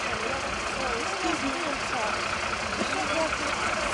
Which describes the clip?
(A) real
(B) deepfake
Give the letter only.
A